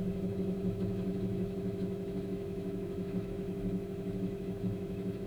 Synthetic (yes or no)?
yes